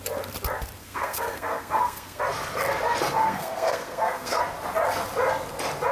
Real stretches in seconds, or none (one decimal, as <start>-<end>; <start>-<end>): 0.0-0.8; 2.2-3.2; 4.4-5.9